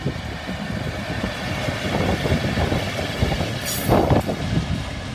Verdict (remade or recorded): recorded